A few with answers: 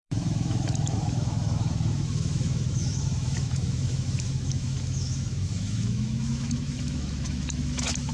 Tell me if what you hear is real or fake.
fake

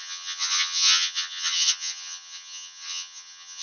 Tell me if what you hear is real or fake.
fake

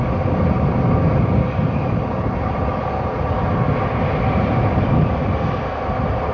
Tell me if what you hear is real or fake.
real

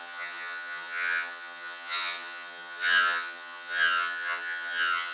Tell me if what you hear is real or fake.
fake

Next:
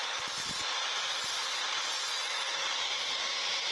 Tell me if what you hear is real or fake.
real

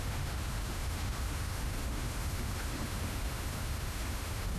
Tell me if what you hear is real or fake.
fake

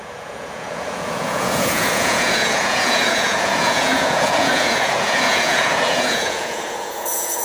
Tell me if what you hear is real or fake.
fake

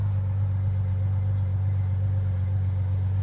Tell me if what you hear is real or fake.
real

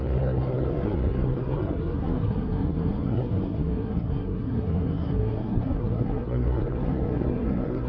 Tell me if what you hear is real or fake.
fake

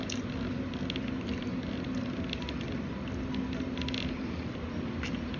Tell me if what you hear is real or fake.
real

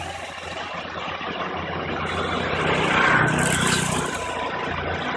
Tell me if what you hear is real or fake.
real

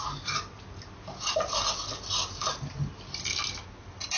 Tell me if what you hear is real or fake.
real